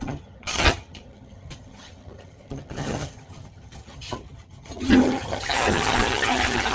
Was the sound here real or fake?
fake